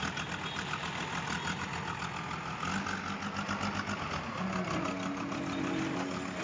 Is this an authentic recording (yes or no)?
yes